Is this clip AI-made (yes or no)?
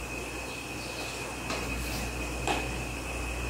no